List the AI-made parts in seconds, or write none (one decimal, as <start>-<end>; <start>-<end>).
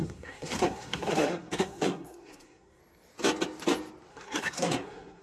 0.0-2.8; 4.1-5.2